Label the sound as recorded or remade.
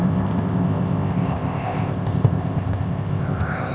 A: remade